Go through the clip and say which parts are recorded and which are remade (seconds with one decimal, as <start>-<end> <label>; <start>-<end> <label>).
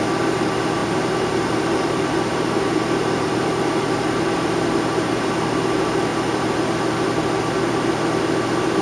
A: 0.0-0.8 recorded; 0.8-5.1 remade; 5.1-8.8 recorded